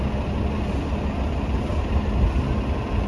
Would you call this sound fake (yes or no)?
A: no